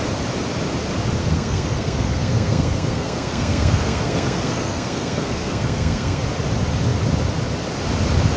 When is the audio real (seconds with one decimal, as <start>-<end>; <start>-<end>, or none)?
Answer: 0.0-1.2; 6.2-8.4

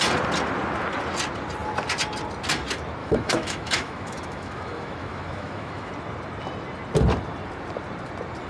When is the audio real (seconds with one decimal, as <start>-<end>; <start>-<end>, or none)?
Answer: 0.0-3.0; 5.9-8.5

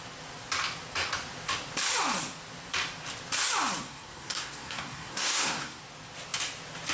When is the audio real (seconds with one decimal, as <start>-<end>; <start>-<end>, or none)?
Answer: 0.0-3.8; 5.8-6.9

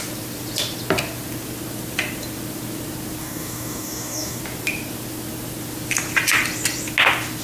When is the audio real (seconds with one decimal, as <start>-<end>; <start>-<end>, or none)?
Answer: 0.0-3.2; 4.4-7.4

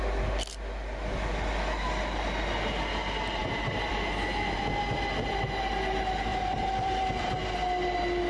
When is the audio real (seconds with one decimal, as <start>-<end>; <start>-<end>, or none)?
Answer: 0.0-6.3; 7.3-8.3

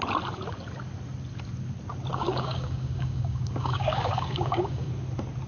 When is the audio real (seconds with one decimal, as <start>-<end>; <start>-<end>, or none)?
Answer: 0.0-2.1; 4.9-5.5

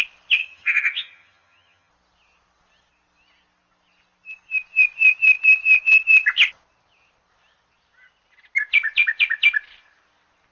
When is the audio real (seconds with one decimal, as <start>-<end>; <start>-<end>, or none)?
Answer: 0.0-0.4; 1.9-10.5

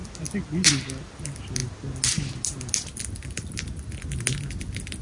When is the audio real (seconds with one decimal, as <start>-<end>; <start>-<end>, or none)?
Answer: 0.0-5.0